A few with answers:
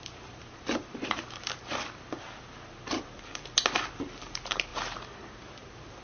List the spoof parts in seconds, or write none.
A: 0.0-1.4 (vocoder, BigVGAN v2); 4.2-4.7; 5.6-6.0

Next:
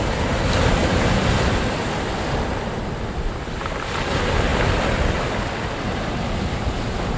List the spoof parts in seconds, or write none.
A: 4.5-5.2 (vocoder, BigVGAN v2)

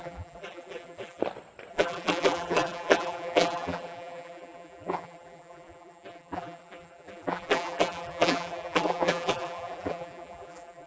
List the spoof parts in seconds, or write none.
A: 0.0-1.2 (vocoder, BigVGAN v2); 1.7-10.9

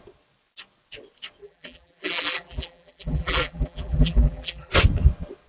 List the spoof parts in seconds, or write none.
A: 1.4-4.7 (vocoder, BigVGAN v2)

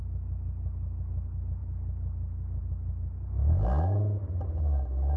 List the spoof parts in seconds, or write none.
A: none

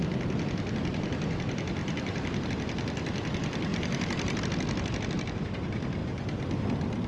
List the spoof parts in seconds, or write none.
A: 1.8-2.5 (vocoder, BigVGAN v2); 3.7-4.4

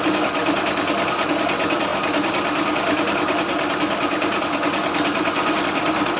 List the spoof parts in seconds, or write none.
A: 0.0-0.4 (vocoder, BigVGAN v2); 1.3-1.9; 5.6-6.2

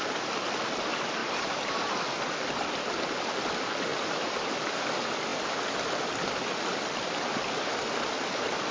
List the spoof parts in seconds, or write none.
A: 1.2-1.9 (vocoder, BigVGAN v2); 3.9-4.5